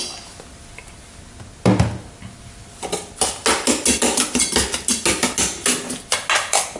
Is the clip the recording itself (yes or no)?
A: yes